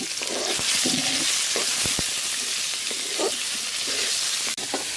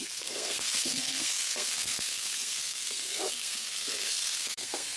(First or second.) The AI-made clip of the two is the second